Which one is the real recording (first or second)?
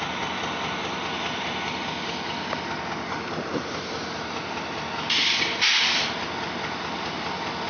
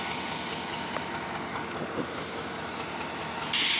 second